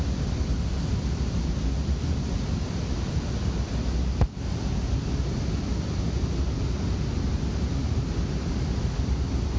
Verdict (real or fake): real